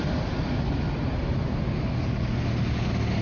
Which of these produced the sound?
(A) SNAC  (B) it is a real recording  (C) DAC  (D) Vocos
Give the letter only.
B